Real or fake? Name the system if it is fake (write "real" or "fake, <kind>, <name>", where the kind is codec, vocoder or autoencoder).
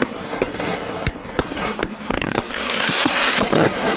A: fake, codec, SNAC